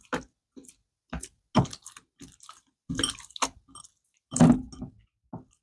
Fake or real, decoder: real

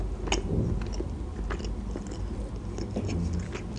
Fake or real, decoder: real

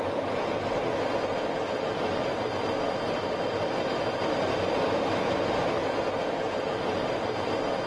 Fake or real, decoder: real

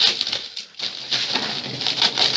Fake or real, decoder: real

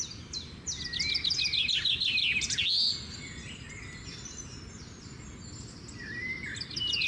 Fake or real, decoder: real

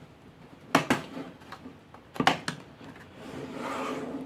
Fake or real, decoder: real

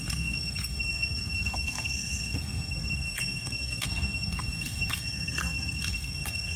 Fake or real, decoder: fake, codec, SNAC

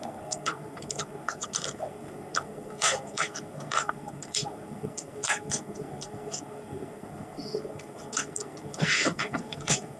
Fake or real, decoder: fake, codec, SNAC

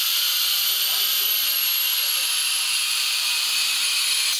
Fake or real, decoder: real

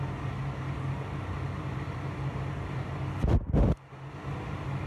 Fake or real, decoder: real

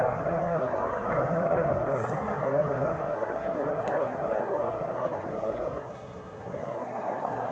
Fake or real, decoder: fake, codec, SNAC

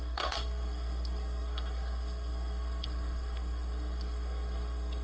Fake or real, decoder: fake, codec, SNAC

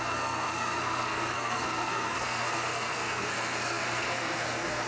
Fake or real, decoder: fake, codec, SNAC